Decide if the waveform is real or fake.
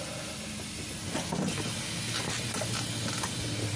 real